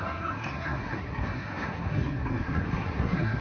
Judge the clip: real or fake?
fake